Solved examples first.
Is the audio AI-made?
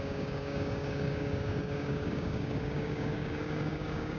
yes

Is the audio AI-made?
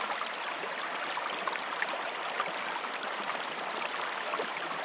no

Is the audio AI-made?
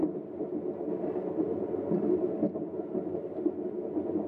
no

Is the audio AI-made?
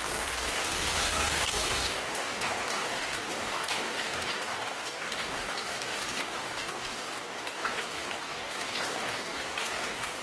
yes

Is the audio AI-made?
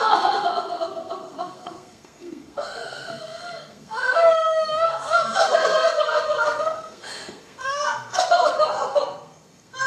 yes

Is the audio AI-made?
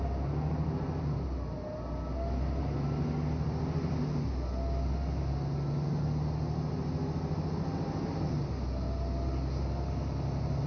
no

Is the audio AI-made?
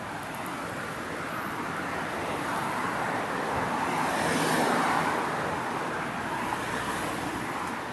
no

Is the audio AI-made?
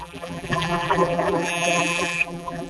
yes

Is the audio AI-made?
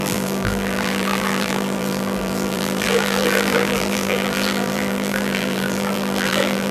yes